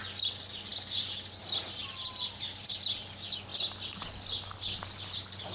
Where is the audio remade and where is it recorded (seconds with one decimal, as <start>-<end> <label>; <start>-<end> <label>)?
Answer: 0.0-5.5 recorded